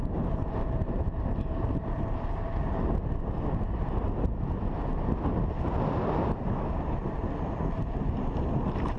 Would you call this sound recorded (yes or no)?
yes